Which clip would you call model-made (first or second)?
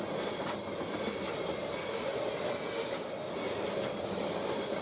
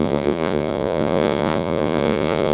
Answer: second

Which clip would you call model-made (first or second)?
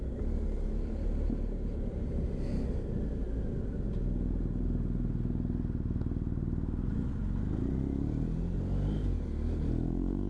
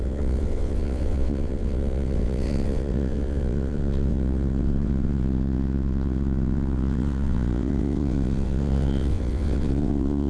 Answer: second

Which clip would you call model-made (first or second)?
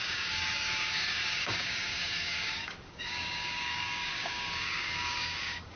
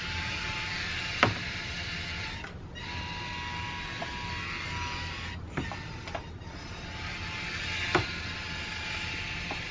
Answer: first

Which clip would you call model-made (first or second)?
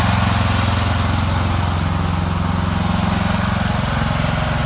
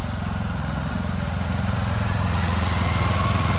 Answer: second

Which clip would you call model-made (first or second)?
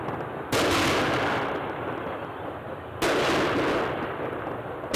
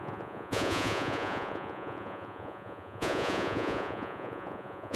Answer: second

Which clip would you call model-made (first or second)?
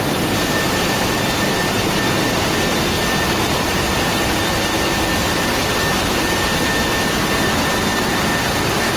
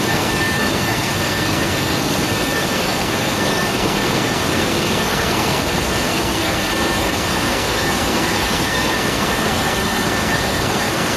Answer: second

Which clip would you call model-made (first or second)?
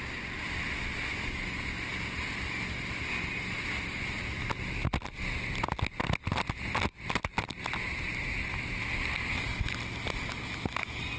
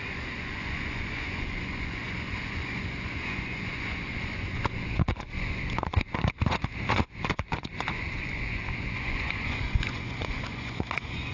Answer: second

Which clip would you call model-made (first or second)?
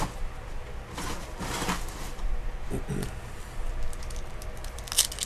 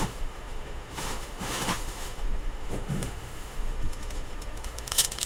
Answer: second